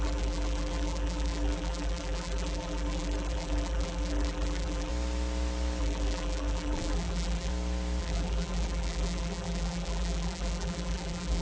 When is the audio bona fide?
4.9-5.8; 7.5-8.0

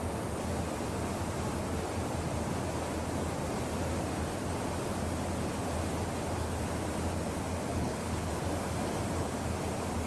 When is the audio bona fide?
0.0-7.7; 8.3-10.1

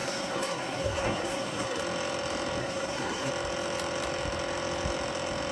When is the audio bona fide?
1.8-2.6; 3.3-5.5

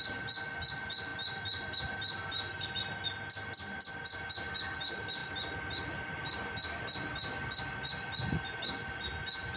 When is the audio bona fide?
0.0-9.6

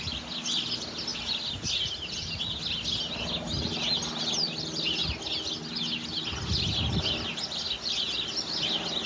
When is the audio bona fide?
0.0-9.1

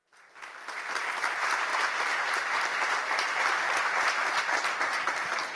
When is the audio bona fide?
0.0-1.7; 5.1-5.6

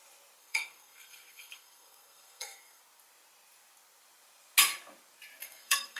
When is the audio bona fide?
0.0-0.4; 2.8-5.4

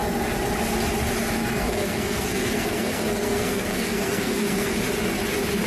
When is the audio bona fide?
0.0-1.4; 4.8-5.7